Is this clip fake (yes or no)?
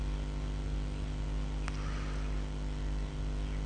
no